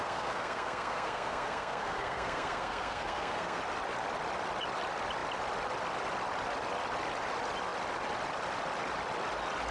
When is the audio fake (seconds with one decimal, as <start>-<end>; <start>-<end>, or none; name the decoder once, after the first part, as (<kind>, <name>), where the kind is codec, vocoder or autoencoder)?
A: 0.0-3.6 (codec, SNAC)